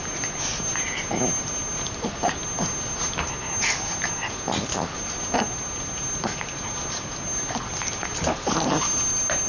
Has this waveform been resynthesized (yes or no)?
no